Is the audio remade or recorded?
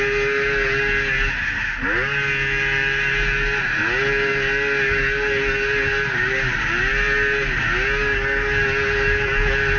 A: recorded